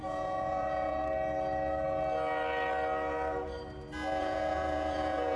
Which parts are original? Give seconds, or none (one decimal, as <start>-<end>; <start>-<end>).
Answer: 1.0-4.2